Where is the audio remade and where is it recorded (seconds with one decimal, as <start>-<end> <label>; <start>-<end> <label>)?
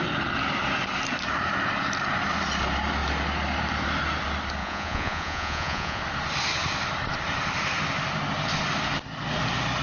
0.0-4.6 recorded; 4.6-6.0 remade; 6.0-9.8 recorded